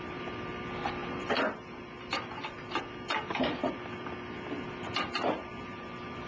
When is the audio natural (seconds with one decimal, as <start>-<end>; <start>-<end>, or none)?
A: 0.0-6.3

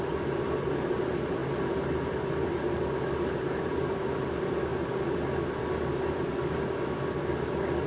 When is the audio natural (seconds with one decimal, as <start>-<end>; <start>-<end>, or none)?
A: 0.0-7.9